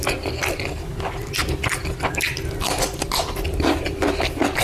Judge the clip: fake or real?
real